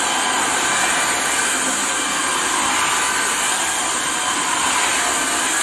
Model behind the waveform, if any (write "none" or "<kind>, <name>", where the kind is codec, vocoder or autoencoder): none